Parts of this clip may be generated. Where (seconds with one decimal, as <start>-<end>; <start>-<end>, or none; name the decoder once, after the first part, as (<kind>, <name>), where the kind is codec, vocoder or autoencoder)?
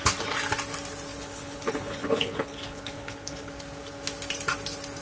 1.1-3.5 (codec, HILCodec)